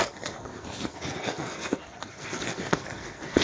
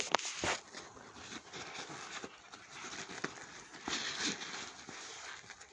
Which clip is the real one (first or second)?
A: second